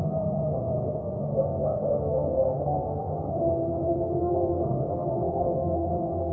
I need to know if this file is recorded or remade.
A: remade